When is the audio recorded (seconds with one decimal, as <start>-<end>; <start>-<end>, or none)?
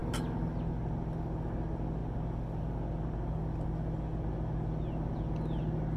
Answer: 0.0-6.0